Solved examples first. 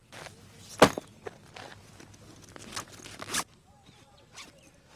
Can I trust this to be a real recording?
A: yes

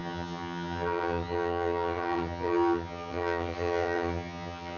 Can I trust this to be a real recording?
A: no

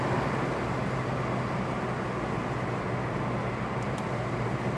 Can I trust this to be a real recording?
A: yes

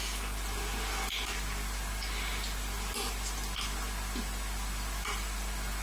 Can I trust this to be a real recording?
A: yes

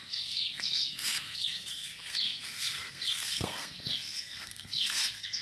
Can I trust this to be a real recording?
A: no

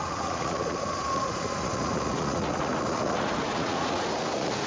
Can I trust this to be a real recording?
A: no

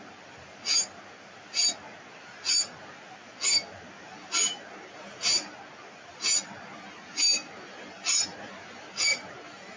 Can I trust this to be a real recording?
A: yes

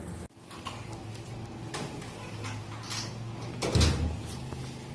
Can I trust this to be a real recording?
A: yes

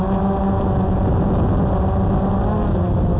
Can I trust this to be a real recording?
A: yes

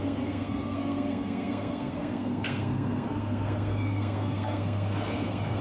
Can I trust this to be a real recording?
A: no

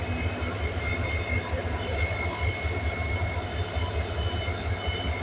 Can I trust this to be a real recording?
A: yes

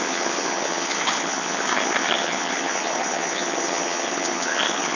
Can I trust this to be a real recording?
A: no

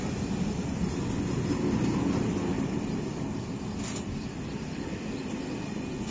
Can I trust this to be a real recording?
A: yes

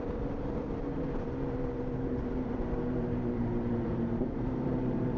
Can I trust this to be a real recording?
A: no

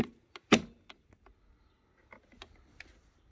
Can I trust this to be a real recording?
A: yes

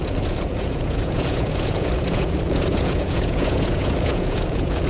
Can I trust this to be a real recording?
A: no